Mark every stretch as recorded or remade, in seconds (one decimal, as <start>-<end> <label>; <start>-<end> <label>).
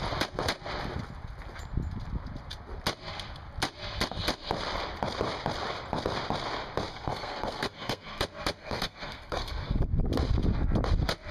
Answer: 0.0-6.9 recorded; 6.9-8.2 remade; 8.2-8.6 recorded; 8.6-9.8 remade; 9.8-11.3 recorded